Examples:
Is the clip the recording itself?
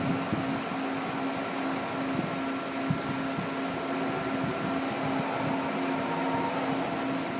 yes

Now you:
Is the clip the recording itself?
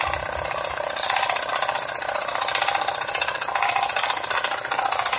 yes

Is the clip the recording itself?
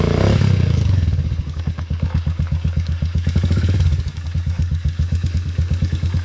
no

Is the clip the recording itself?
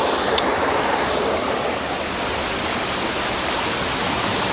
yes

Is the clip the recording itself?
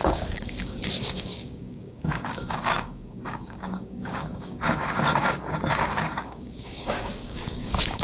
no